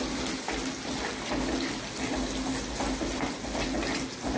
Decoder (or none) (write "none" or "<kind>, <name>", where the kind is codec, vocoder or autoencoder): none